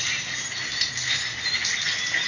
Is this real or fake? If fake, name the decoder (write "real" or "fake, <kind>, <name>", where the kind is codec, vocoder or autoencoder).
real